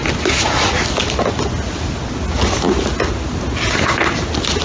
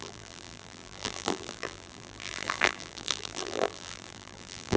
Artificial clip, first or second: second